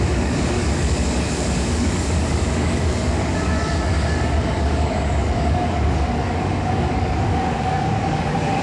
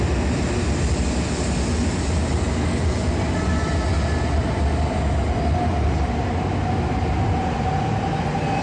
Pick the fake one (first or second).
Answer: first